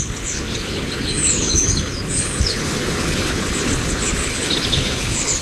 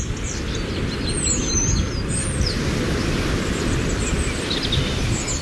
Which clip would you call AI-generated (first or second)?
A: first